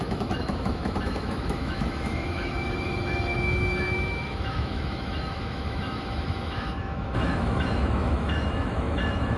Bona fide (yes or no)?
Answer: no